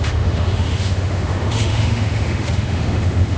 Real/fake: fake